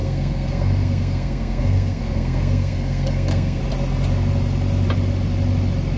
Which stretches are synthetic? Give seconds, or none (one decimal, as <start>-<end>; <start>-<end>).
0.0-3.6

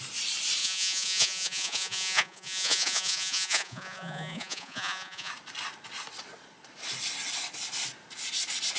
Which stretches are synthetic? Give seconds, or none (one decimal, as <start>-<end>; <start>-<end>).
0.6-5.3

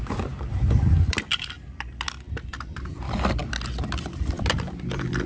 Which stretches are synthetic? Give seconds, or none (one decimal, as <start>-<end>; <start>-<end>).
none

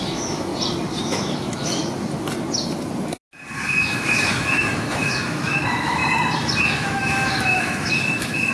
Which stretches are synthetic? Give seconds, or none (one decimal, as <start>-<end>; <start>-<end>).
0.0-0.5; 1.0-1.8; 3.8-6.0; 6.6-8.5

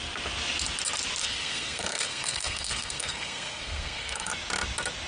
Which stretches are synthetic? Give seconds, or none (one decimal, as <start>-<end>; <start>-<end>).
1.2-4.3

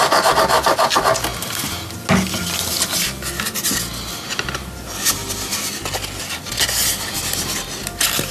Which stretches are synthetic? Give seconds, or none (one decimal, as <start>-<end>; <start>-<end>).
none